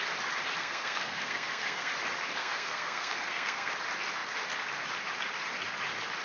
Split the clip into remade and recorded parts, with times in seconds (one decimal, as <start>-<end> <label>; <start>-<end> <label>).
0.0-0.6 recorded; 0.6-1.9 remade; 1.9-2.4 recorded; 2.4-3.7 remade; 3.7-6.2 recorded